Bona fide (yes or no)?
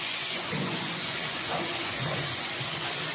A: no